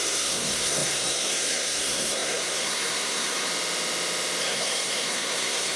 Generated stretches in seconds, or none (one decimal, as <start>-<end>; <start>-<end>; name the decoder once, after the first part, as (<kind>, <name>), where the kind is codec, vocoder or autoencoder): 0.0-3.5 (codec, SNAC); 4.4-5.8